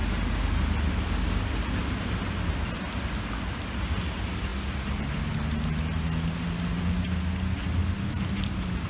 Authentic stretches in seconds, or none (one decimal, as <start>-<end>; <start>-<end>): 0.0-8.9